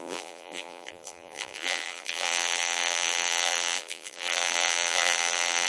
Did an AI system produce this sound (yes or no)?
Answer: yes